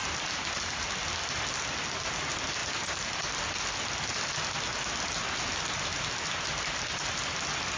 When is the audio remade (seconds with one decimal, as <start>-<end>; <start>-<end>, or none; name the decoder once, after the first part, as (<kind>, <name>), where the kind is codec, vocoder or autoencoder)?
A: none